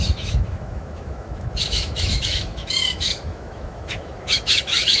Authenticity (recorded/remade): remade